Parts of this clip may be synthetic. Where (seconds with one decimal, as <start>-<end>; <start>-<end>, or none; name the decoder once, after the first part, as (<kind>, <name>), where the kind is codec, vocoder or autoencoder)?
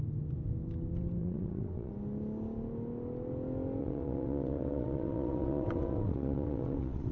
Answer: 1.2-1.9 (vocoder, WaveNeXt); 3.8-7.1